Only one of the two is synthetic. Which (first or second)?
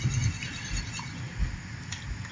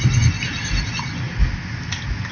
first